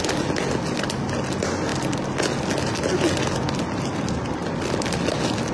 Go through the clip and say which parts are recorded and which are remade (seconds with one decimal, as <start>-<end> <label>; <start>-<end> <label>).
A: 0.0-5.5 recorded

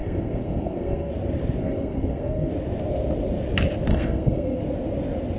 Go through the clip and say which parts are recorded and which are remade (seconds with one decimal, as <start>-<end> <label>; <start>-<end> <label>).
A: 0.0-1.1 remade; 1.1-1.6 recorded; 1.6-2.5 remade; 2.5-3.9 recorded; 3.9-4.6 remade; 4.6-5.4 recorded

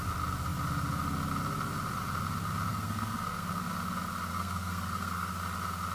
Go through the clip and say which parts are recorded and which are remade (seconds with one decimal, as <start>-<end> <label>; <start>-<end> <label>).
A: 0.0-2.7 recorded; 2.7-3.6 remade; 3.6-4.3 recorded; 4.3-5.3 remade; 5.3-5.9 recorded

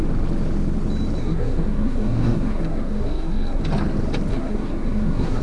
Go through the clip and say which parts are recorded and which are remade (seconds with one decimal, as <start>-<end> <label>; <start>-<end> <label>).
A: 0.0-1.2 recorded; 1.2-3.6 remade; 3.6-4.3 recorded; 4.3-5.4 remade